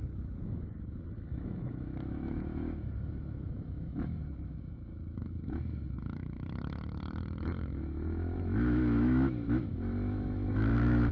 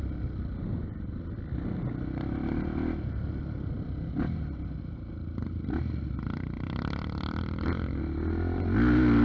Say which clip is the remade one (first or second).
first